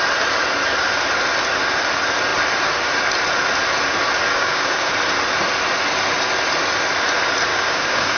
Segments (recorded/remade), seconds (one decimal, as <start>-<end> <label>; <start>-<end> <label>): 0.0-4.3 recorded; 4.3-4.9 remade; 4.9-7.5 recorded; 7.5-8.2 remade